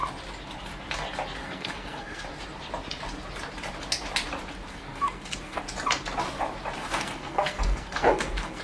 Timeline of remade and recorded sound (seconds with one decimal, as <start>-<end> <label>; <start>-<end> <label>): 0.0-1.4 recorded; 1.4-2.2 remade; 2.2-4.7 recorded; 4.7-5.6 remade; 5.6-6.8 recorded; 6.8-8.6 remade